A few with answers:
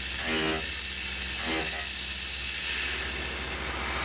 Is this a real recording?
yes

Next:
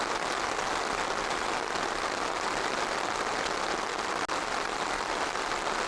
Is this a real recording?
yes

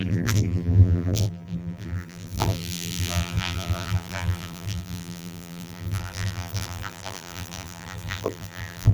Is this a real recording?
no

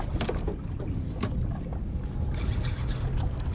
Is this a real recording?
yes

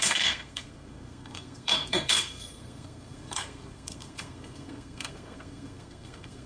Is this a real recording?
no